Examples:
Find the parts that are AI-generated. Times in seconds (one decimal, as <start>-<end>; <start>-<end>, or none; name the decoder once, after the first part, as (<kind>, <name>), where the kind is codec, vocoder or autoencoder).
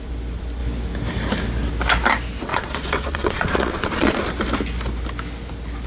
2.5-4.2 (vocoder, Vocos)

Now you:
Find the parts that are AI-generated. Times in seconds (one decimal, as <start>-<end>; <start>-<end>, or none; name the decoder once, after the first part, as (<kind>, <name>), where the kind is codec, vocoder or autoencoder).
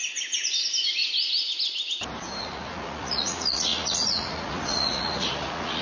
2.4-5.8 (vocoder, Vocos)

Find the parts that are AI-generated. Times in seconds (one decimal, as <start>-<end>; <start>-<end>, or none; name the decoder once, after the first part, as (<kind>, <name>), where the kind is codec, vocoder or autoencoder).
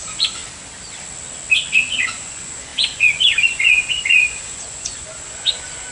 0.0-0.4 (vocoder, Vocos); 2.0-5.9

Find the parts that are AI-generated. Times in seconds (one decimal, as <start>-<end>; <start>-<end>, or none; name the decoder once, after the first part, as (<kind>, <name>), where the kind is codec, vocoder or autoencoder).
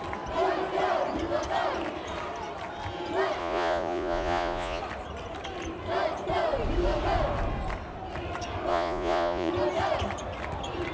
3.4-4.8 (vocoder, Vocos); 8.7-9.5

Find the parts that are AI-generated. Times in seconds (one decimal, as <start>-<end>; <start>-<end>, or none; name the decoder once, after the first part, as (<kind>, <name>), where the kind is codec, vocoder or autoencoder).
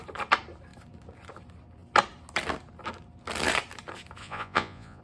4.2-5.0 (vocoder, Vocos)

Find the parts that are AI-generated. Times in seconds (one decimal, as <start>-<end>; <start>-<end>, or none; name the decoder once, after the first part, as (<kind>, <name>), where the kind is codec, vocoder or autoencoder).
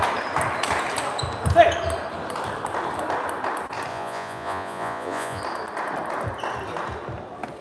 3.9-5.4 (vocoder, Vocos)